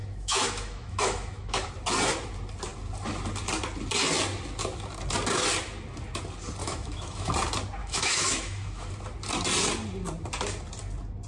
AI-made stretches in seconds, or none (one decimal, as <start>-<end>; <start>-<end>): 0.0-1.7; 6.6-7.3; 7.8-8.9

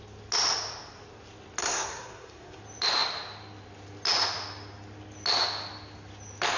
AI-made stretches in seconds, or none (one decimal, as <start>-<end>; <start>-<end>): 1.6-2.6

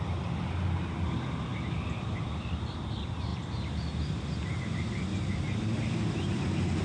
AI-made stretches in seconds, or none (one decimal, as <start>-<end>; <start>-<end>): 1.5-2.6

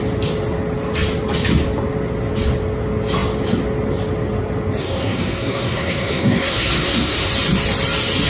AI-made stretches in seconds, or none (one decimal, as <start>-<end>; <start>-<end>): 4.8-7.3

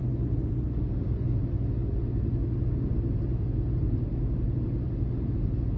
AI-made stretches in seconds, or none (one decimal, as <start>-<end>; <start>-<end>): none

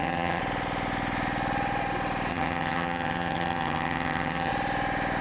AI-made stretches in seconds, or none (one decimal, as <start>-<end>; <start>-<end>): 0.0-0.4; 2.3-4.5

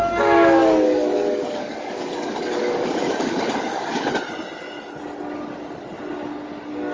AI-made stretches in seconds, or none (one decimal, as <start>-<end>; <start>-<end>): 0.6-4.1